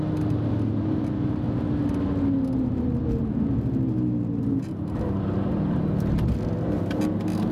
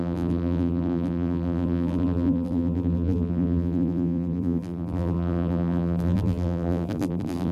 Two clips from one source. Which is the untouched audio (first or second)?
first